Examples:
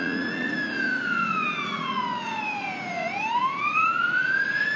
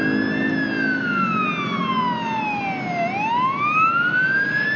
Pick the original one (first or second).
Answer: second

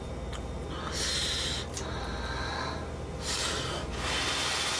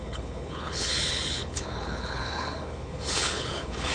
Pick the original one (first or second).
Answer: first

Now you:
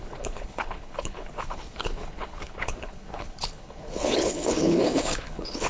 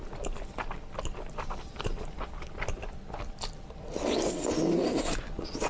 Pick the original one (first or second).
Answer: second